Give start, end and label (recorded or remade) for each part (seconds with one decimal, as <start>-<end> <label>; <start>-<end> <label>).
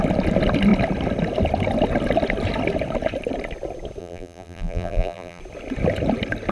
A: 0.0-4.0 recorded; 4.0-5.4 remade; 5.4-6.5 recorded